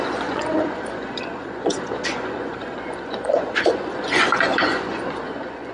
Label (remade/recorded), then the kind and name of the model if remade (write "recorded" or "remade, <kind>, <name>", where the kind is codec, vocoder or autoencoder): remade, vocoder, Vocos